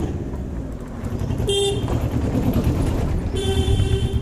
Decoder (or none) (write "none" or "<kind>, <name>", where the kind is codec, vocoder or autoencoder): vocoder, BigVGAN v2